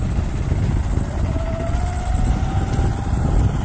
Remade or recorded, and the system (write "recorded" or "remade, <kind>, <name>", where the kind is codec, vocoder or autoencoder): recorded